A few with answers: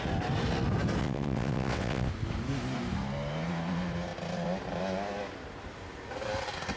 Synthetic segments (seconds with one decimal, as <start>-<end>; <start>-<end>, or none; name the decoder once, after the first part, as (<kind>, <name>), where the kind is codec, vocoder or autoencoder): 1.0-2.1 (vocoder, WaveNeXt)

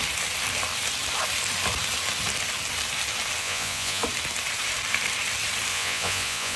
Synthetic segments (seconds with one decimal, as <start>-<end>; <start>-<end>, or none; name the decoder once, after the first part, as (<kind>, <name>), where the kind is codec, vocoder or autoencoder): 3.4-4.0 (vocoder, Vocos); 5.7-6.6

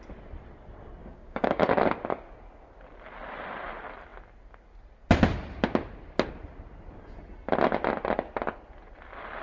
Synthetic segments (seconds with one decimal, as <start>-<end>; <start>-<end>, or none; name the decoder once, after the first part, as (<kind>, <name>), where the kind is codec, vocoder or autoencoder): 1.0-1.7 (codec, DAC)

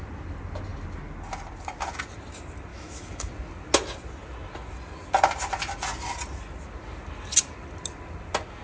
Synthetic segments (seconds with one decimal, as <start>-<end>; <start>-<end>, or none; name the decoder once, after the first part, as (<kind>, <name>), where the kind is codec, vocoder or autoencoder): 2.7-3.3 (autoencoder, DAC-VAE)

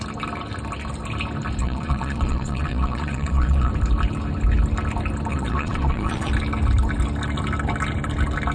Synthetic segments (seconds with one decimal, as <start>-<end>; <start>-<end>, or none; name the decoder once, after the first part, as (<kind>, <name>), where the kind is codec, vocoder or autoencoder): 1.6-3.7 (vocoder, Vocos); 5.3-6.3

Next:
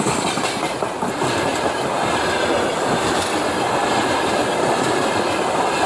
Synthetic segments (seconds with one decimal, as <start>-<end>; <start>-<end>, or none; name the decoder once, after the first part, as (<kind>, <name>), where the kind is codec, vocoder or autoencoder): none

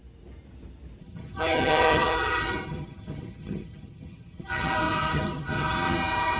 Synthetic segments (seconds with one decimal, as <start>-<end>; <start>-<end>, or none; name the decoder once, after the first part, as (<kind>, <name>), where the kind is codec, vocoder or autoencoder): 1.0-6.4 (vocoder, HiFi-GAN)

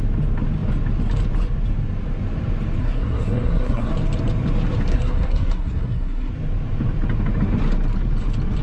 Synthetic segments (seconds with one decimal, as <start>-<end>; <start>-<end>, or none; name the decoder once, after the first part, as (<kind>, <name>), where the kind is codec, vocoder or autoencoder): 2.8-3.9 (codec, SNAC); 4.9-6.3